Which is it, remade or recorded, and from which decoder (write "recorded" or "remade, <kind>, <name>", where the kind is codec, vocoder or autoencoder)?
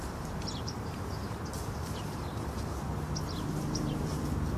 remade, vocoder, BigVGAN v2